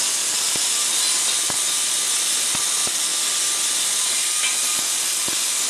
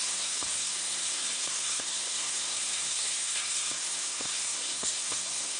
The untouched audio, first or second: first